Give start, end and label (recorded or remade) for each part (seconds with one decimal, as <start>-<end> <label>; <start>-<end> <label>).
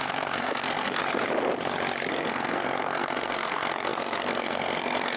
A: 0.0-1.0 remade; 1.0-2.1 recorded; 2.1-5.2 remade